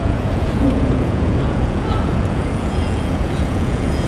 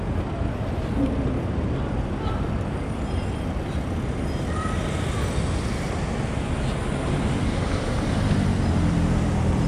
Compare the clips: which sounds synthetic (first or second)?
first